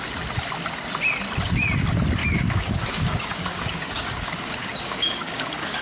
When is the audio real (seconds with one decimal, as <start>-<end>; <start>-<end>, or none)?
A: 0.0-2.2